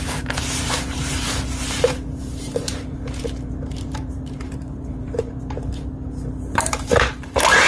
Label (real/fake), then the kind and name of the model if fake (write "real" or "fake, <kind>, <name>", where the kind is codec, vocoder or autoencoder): fake, vocoder, BigVGAN v2